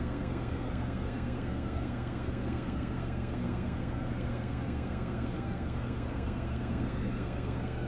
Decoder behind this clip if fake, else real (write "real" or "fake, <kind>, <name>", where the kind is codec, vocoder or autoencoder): fake, codec, SNAC